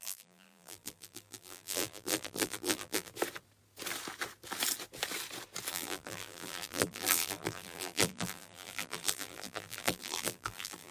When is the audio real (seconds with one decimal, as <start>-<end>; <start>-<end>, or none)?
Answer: 3.1-5.7